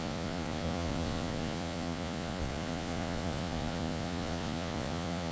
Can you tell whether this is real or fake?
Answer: fake